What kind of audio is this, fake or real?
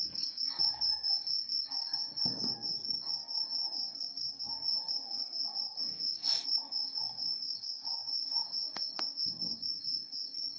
fake